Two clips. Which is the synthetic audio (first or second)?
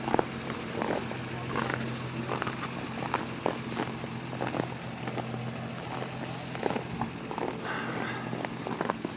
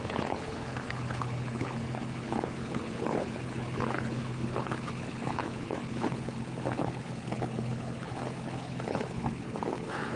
second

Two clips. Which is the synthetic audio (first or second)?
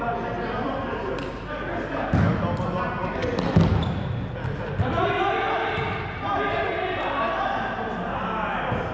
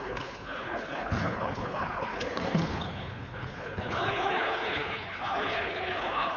second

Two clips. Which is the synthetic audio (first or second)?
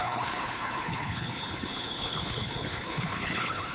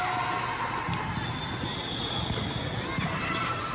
first